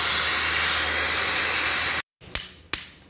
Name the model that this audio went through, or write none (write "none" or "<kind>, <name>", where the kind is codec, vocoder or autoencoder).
none